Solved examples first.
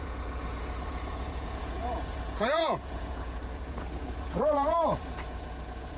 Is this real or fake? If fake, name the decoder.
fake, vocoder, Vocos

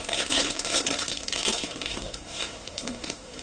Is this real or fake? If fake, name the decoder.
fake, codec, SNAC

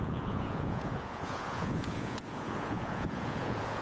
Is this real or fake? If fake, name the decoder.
fake, vocoder, Vocos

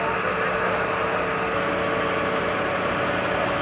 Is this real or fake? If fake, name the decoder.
real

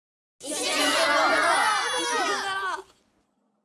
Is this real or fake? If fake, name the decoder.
real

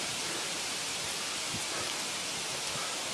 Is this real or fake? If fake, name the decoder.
real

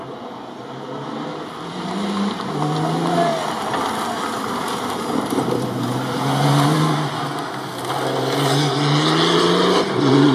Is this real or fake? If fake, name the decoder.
real